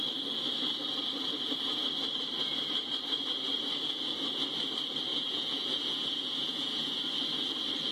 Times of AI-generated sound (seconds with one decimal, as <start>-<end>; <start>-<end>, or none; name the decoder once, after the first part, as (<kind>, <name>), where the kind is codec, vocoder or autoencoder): 5.1-7.0 (vocoder, Vocos)